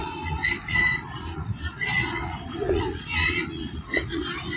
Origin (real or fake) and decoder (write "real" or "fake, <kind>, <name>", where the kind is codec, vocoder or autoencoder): fake, vocoder, Vocos